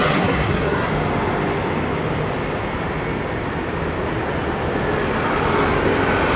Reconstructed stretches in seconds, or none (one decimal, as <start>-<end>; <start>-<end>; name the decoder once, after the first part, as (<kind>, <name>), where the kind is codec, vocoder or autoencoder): 0.0-0.9 (codec, SNAC)